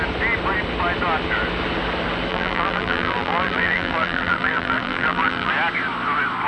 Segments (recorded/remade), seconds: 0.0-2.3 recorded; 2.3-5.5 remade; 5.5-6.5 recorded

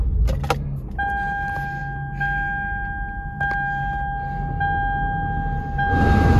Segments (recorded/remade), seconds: 0.0-6.4 recorded

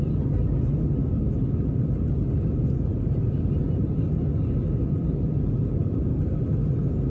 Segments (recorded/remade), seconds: 0.0-2.9 recorded; 2.9-4.0 remade; 4.0-5.8 recorded; 5.8-6.4 remade; 6.4-7.1 recorded

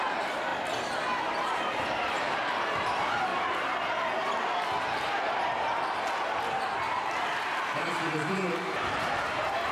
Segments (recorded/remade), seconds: 0.0-0.5 remade; 0.5-1.6 recorded; 1.6-3.3 remade; 3.3-7.0 recorded; 7.0-9.7 remade